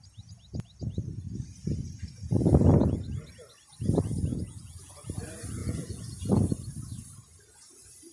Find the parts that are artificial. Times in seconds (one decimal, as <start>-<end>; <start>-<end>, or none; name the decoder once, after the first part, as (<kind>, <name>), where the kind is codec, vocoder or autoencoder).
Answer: 4.3-4.9 (vocoder, Vocos); 5.6-6.3